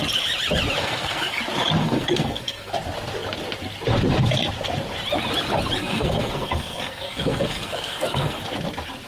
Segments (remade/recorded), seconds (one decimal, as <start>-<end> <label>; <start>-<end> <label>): 0.0-0.8 recorded; 0.8-1.4 remade; 1.4-1.8 recorded; 1.8-2.7 remade; 2.7-5.8 recorded; 5.8-8.4 remade; 8.4-9.1 recorded